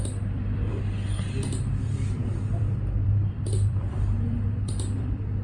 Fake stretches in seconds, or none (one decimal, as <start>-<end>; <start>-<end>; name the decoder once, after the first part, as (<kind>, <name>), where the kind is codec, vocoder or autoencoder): 0.0-0.7 (vocoder, BigVGAN v2); 1.8-5.4